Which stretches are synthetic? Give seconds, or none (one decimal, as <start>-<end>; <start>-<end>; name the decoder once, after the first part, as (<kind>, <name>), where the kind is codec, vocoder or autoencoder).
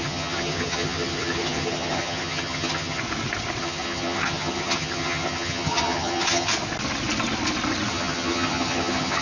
0.0-3.0 (vocoder, HiFi-GAN); 3.6-6.5; 7.9-9.2